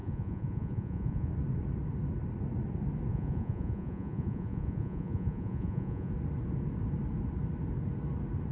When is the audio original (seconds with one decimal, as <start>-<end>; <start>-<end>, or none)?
1.3-3.1; 6.1-8.5

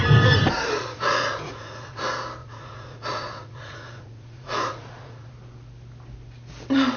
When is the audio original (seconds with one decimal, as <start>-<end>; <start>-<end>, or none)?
0.0-0.8; 2.0-2.4; 5.3-7.0

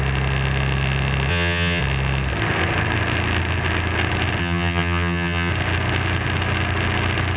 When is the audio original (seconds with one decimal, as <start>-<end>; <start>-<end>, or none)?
0.0-1.3; 1.8-4.4; 5.5-7.4

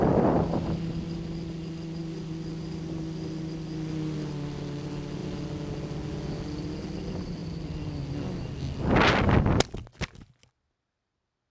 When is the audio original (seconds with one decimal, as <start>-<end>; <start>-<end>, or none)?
0.0-11.5